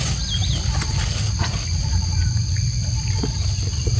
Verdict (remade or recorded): recorded